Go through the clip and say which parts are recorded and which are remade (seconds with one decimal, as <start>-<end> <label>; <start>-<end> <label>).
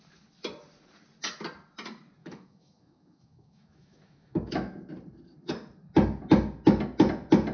0.0-2.2 recorded; 2.2-4.9 remade; 4.9-7.5 recorded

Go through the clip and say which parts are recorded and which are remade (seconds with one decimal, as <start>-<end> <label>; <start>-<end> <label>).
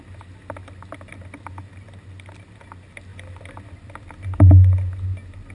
0.0-5.5 recorded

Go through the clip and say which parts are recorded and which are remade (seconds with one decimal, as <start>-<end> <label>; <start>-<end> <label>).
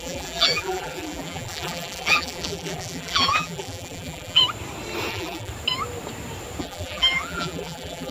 0.0-4.4 remade; 4.4-5.1 recorded; 5.1-5.5 remade; 5.5-6.6 recorded; 6.6-8.1 remade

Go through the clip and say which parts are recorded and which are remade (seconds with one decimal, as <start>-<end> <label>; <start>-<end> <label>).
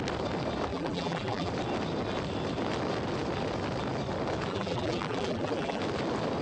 0.0-0.7 recorded; 0.7-1.5 remade; 1.5-4.5 recorded; 4.5-5.8 remade; 5.8-6.4 recorded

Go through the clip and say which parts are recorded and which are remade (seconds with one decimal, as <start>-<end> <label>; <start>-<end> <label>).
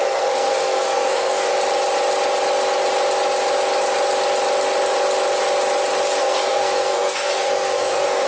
0.0-1.5 remade; 1.5-6.2 recorded; 6.2-8.3 remade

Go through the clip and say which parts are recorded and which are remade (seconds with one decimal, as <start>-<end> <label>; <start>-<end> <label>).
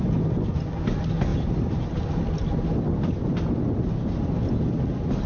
0.0-5.3 recorded